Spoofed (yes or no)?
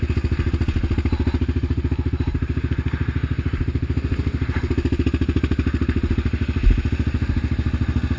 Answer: no